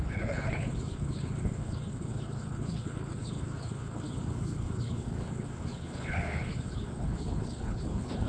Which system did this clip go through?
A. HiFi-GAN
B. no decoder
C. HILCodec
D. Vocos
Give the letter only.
C